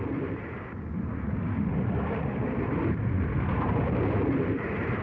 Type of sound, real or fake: fake